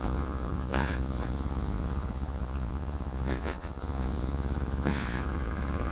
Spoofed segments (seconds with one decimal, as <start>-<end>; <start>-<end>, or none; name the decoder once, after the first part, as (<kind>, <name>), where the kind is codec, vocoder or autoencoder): 0.0-5.9 (vocoder, Vocos)

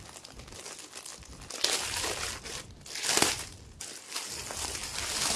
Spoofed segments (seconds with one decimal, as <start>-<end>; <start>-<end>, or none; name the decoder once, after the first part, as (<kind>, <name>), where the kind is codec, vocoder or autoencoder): none

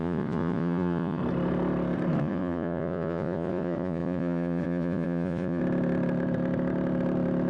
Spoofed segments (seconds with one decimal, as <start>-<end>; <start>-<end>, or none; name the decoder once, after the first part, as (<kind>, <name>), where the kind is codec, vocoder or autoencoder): 0.0-1.2 (vocoder, Vocos); 2.2-5.6

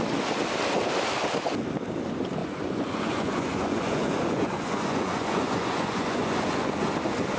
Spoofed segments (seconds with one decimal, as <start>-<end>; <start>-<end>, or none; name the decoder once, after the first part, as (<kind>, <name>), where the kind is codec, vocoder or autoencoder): 2.4-6.8 (vocoder, Vocos)

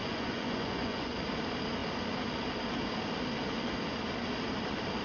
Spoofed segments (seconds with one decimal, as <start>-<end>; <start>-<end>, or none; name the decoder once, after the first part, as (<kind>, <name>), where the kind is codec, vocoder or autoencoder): 0.0-1.1 (vocoder, Vocos)

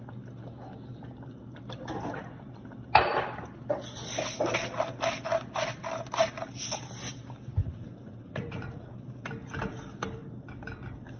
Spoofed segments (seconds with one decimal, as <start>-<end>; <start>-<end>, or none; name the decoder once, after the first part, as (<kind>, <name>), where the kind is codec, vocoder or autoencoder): 7.6-9.0 (vocoder, Vocos)

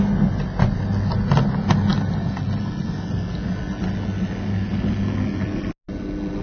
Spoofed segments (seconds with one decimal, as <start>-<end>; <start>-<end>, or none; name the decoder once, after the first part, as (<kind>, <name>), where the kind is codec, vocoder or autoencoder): none

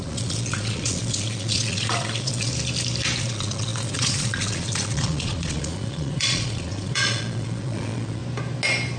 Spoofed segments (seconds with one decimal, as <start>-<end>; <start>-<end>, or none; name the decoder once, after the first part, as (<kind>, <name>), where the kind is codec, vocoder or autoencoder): 0.0-2.5 (vocoder, Vocos); 3.2-8.2